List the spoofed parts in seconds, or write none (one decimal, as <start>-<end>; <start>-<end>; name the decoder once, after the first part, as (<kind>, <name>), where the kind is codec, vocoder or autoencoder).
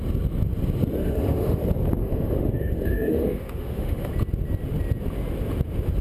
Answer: 1.0-1.6 (autoencoder, DAC-VAE); 2.0-4.1